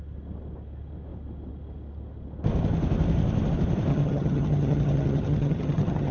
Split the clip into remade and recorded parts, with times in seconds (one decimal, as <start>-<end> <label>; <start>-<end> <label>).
0.0-3.9 recorded; 3.9-6.1 remade